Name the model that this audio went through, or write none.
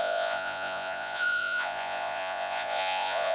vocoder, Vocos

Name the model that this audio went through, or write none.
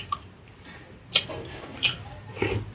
none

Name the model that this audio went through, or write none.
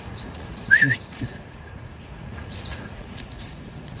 vocoder, Vocos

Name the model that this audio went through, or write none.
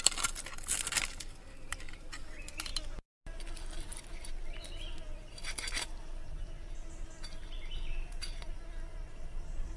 none